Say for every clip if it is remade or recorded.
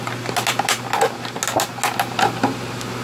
recorded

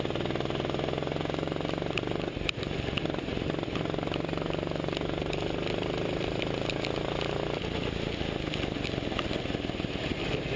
recorded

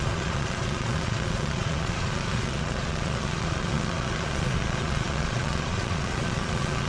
remade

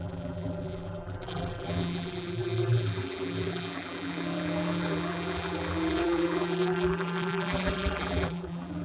remade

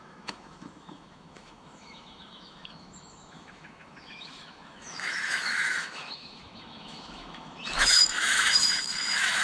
remade